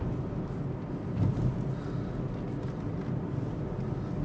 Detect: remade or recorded recorded